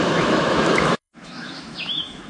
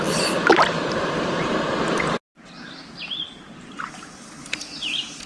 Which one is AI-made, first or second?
first